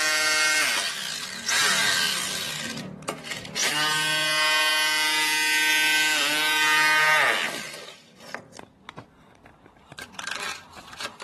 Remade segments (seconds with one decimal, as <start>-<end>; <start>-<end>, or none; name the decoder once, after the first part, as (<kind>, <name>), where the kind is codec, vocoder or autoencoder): 9.5-11.2 (vocoder, BigVGAN v2)